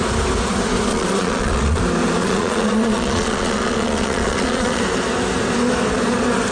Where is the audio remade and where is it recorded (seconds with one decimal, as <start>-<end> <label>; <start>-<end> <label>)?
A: 0.0-0.9 recorded; 0.9-1.8 remade; 1.8-2.2 recorded; 2.2-4.8 remade; 4.8-6.5 recorded